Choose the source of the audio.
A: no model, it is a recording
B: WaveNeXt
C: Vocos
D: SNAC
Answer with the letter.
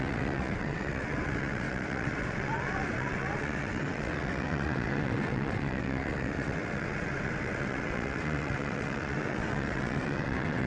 B